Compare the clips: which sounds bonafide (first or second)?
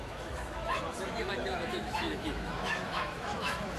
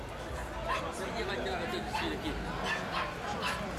second